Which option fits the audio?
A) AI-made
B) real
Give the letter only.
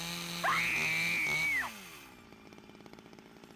B